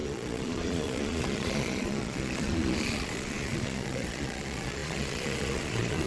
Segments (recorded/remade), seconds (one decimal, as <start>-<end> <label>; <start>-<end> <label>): 0.0-6.1 remade